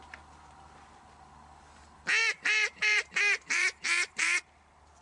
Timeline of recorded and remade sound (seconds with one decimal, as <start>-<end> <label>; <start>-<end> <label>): 0.0-2.2 recorded; 2.2-4.4 remade; 4.4-5.0 recorded